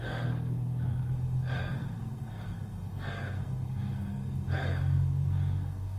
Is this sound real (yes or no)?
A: no